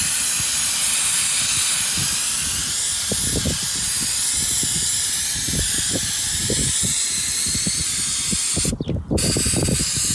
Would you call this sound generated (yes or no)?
no